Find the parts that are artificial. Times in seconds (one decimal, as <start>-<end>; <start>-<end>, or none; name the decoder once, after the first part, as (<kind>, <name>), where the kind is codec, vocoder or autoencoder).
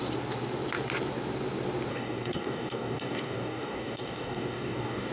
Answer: 1.9-5.1 (codec, DAC)